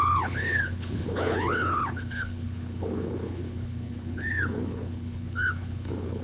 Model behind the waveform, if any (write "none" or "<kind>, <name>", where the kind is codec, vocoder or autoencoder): codec, HILCodec